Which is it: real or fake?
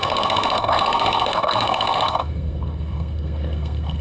fake